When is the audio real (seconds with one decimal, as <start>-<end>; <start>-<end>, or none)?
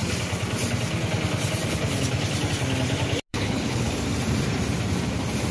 0.0-3.3; 3.9-5.5